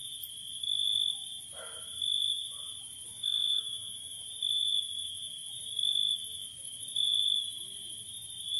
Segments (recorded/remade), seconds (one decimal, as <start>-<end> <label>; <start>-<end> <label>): 0.0-3.1 recorded; 3.1-4.2 remade; 4.2-8.6 recorded